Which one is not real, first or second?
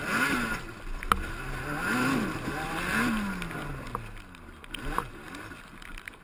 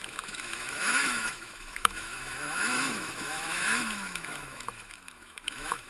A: second